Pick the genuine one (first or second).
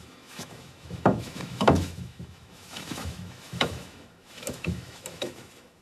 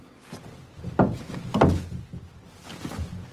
second